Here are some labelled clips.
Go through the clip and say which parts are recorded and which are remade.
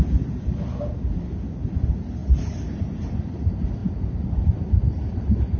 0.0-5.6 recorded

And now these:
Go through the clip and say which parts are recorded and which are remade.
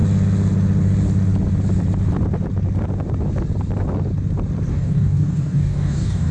0.0-4.7 recorded; 4.7-6.3 remade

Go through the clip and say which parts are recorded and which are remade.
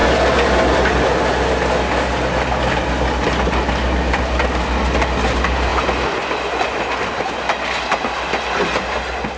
0.0-9.4 recorded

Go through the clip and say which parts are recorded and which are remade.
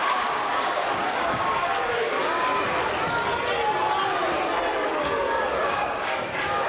0.0-2.5 remade; 2.5-5.5 recorded; 5.5-6.7 remade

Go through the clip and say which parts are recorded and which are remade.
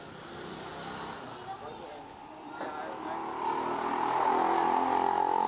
0.0-5.5 recorded